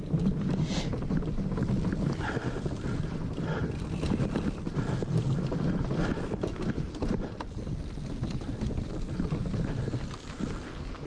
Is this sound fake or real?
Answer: real